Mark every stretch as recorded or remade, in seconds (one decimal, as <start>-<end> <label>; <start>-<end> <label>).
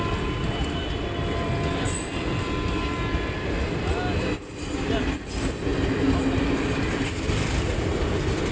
0.0-0.4 recorded; 0.4-1.5 remade; 1.5-8.5 recorded